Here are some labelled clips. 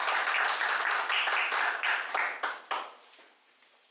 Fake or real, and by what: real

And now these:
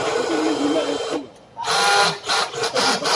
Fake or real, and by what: real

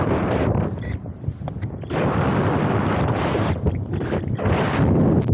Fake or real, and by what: real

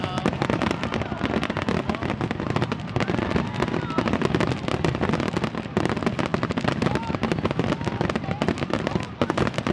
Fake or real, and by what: real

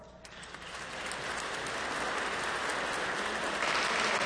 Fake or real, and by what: real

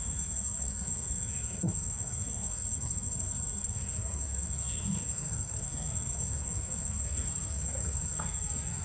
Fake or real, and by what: fake, codec, SNAC